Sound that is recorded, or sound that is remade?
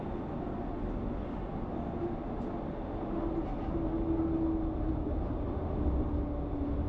recorded